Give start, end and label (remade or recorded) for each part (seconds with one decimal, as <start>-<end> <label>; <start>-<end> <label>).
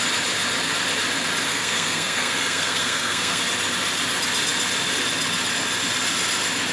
0.0-1.5 recorded; 1.5-3.4 remade; 3.4-6.7 recorded